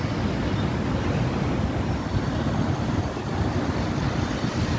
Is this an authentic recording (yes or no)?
yes